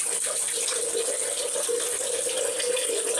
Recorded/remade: recorded